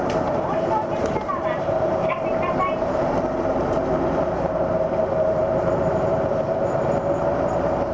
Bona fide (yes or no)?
no